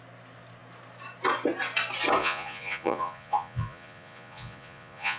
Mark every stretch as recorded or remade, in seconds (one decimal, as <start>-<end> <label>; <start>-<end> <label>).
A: 0.0-2.2 recorded; 2.2-5.2 remade

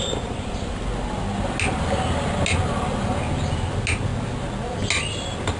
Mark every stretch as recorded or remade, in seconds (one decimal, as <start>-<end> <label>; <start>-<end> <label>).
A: 0.0-5.6 recorded

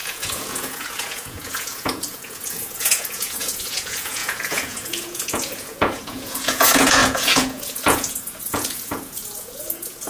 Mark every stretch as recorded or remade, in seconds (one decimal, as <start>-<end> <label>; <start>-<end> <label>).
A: 0.0-10.1 remade

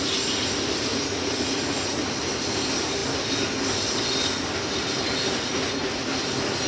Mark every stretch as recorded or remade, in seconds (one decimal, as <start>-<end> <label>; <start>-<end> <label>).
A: 0.0-0.9 recorded; 0.9-2.0 remade; 2.0-5.5 recorded; 5.5-6.0 remade; 6.0-6.7 recorded

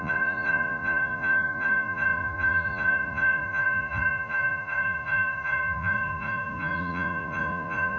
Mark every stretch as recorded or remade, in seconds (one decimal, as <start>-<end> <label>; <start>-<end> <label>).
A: 0.0-8.0 remade

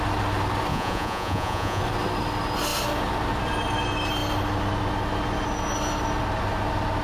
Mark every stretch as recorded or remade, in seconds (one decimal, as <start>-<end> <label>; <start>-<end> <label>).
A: 0.0-0.7 recorded; 0.7-1.8 remade; 1.8-7.0 recorded